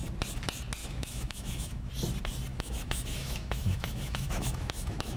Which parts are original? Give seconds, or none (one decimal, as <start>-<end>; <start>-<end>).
0.0-0.8; 1.9-2.5